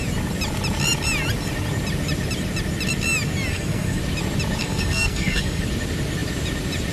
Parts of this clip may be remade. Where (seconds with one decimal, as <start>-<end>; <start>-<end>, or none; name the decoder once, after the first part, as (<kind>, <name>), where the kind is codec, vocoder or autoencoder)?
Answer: 3.5-4.0 (codec, SNAC); 4.6-5.6

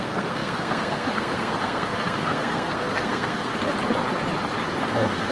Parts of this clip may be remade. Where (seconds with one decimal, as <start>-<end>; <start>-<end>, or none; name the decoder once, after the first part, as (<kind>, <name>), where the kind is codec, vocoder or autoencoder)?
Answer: 0.0-3.5 (codec, SNAC); 4.8-5.3

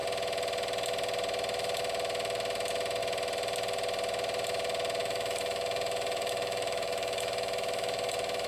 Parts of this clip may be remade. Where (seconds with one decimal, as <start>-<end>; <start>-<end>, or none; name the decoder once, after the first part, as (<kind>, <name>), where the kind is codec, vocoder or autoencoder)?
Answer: 5.0-8.5 (autoencoder, DAC-VAE)

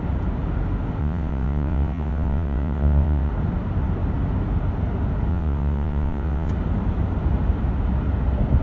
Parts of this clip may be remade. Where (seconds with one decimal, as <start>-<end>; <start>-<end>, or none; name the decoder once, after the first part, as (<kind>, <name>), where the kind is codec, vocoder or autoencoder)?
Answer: 1.0-3.3 (vocoder, WaveNeXt); 5.3-6.5

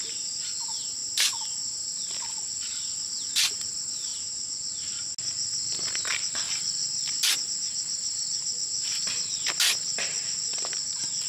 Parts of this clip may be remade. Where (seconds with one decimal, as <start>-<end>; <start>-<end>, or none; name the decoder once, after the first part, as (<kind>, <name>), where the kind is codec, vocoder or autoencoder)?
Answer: none